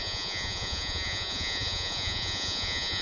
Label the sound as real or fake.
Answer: fake